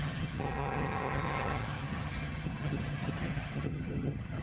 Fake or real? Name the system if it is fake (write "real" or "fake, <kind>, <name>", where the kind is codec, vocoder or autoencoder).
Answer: fake, vocoder, HiFi-GAN